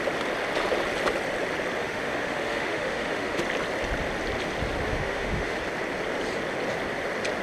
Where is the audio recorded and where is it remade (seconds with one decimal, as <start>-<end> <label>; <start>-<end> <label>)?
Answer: 0.0-1.8 recorded; 1.8-3.4 remade; 3.4-4.9 recorded; 4.9-5.6 remade; 5.6-7.4 recorded